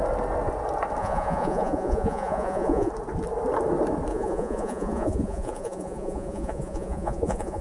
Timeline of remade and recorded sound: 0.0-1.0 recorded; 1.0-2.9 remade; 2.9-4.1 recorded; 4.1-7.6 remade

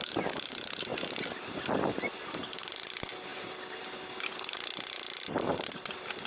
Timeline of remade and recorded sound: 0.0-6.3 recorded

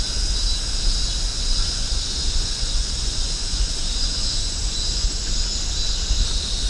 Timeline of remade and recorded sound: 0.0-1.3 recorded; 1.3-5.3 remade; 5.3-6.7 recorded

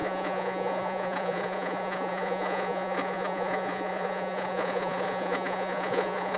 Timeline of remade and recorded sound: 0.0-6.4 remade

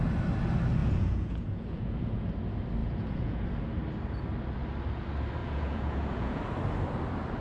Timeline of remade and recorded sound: 0.0-0.8 recorded; 0.8-2.3 remade; 2.3-2.8 recorded; 2.8-3.4 remade; 3.4-5.4 recorded; 5.4-6.4 remade; 6.4-7.4 recorded

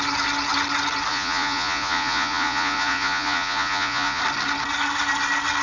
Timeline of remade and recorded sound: 0.0-1.1 recorded; 1.1-4.2 remade; 4.2-5.6 recorded